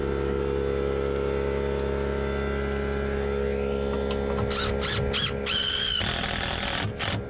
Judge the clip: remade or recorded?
recorded